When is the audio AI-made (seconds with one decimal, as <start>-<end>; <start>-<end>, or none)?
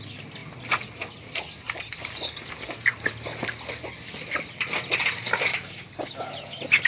5.5-6.3